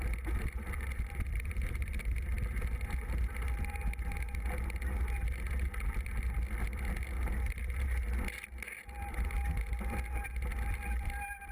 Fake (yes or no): no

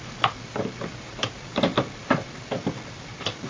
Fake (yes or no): no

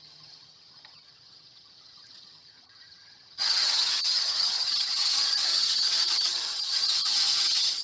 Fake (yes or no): yes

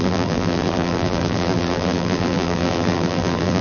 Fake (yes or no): yes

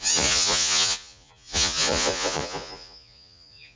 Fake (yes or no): yes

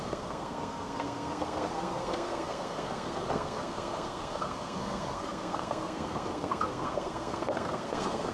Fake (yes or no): yes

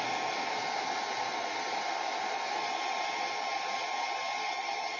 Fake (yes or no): no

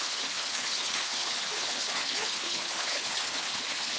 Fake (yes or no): yes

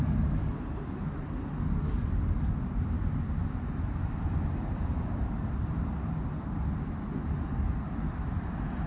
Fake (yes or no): no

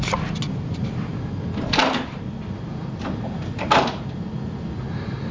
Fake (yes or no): no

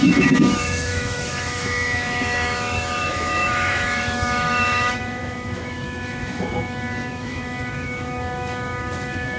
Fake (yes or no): yes